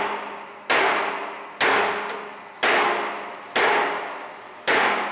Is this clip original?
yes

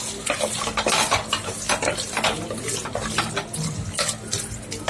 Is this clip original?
yes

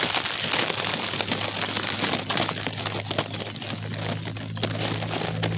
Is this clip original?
yes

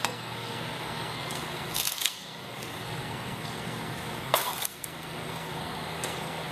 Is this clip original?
no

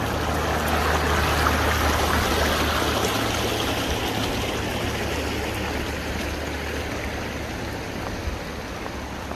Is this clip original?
yes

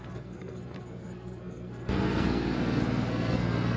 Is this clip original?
no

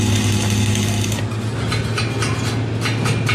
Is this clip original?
yes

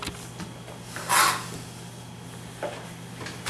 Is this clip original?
yes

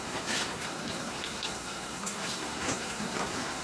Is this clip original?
no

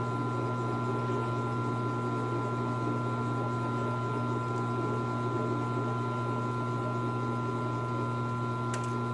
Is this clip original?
yes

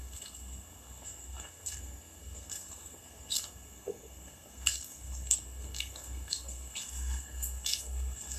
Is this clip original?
no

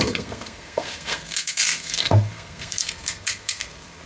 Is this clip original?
no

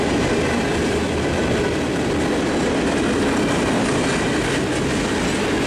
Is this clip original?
yes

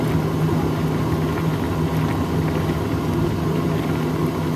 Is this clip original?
yes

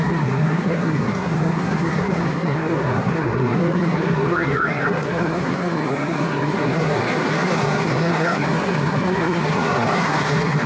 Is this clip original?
no